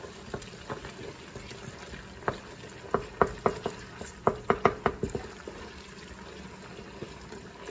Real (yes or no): yes